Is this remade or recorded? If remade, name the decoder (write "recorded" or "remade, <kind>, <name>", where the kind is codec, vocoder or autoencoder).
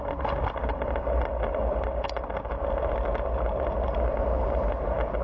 recorded